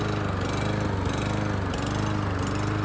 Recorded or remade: recorded